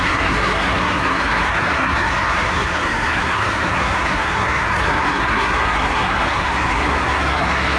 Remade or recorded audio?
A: remade